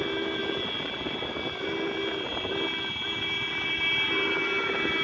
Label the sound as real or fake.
real